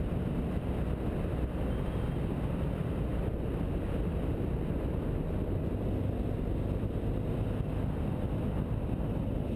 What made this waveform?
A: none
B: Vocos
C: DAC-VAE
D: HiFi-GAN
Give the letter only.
A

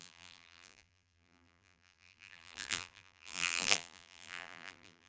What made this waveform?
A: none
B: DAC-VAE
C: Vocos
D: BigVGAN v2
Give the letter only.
D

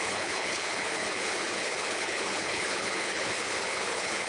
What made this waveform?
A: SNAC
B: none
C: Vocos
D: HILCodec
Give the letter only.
D